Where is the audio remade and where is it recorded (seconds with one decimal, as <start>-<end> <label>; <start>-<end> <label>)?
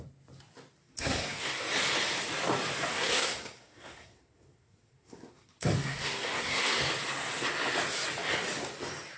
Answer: 0.0-0.8 recorded; 0.8-1.5 remade; 1.5-2.9 recorded; 2.9-6.8 remade; 6.8-9.2 recorded